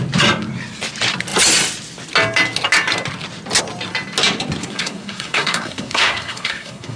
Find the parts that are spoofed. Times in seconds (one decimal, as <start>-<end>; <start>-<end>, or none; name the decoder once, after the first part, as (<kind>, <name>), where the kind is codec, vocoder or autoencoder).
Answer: 4.6-7.0 (codec, SNAC)